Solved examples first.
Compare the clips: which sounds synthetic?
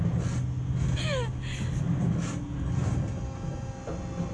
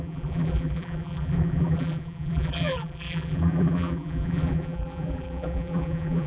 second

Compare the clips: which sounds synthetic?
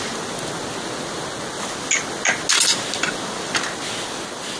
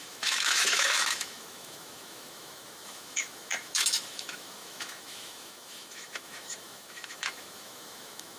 second